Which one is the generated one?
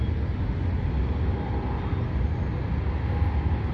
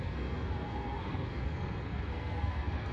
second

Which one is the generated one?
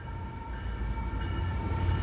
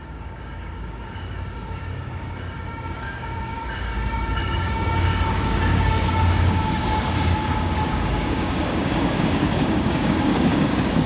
second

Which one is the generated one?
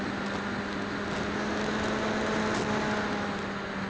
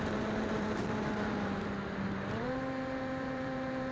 second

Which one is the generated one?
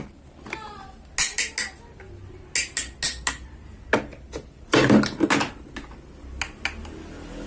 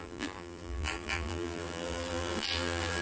second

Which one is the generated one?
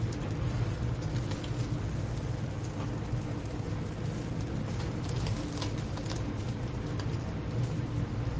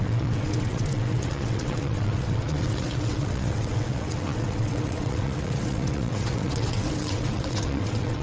second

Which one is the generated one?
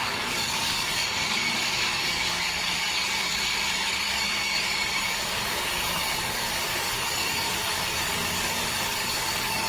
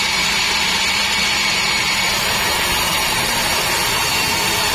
first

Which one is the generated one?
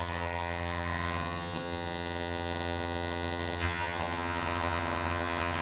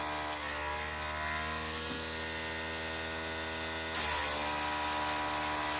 first